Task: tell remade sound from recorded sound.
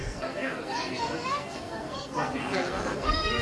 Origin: remade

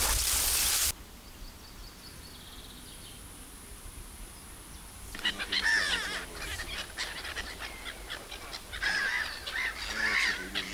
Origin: recorded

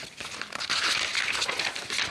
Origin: recorded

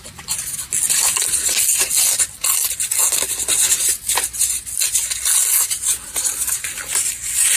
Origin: recorded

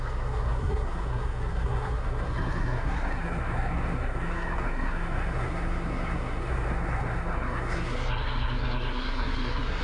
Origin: remade